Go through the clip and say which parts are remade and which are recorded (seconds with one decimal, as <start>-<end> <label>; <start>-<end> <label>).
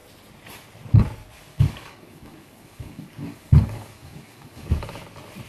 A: 0.0-1.5 recorded; 1.5-4.8 remade; 4.8-5.5 recorded